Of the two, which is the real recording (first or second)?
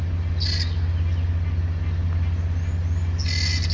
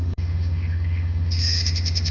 first